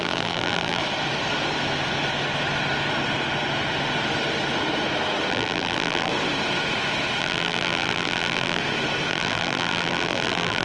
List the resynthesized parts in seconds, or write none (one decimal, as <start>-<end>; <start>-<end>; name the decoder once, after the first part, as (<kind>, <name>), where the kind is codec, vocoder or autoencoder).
0.0-0.8 (vocoder, BigVGAN v2); 5.3-6.1; 7.2-8.6; 9.1-10.6